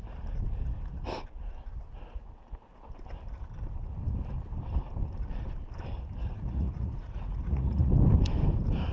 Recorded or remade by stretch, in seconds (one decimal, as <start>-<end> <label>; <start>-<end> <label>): 0.0-6.2 recorded; 6.2-7.9 remade; 7.9-8.9 recorded